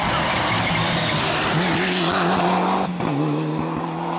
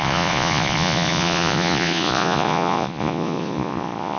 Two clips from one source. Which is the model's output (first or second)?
second